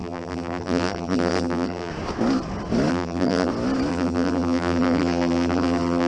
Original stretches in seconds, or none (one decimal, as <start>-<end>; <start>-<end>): 1.9-2.9; 3.5-3.9